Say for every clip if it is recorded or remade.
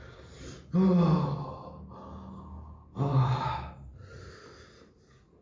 recorded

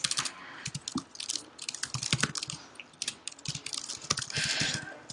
recorded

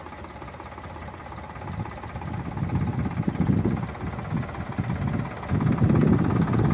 recorded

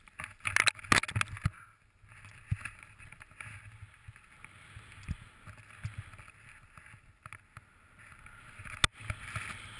recorded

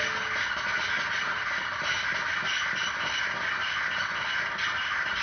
recorded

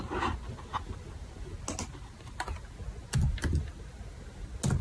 recorded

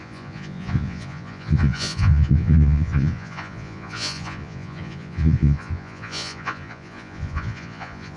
remade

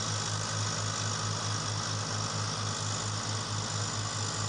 recorded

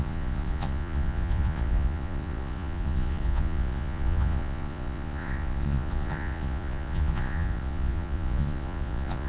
remade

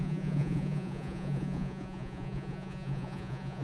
remade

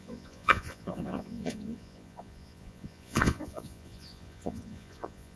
remade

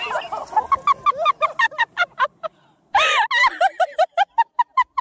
recorded